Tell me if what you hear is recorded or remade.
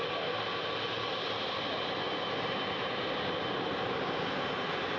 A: recorded